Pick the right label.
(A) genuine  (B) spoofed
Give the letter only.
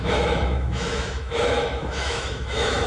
B